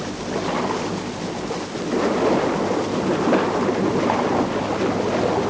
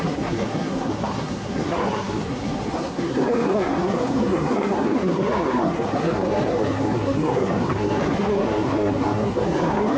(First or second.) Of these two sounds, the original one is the first